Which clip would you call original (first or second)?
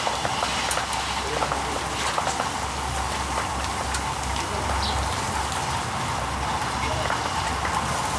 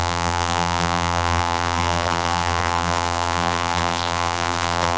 first